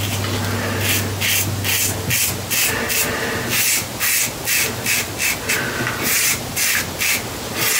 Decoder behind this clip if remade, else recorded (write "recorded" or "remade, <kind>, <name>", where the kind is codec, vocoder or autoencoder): recorded